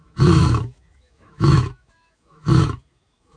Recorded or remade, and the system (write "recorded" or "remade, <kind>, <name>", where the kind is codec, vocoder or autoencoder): remade, autoencoder, DAC-VAE